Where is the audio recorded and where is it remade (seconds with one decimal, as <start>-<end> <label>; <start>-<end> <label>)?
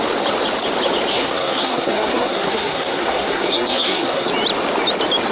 0.0-1.1 recorded; 1.1-4.3 remade; 4.3-5.3 recorded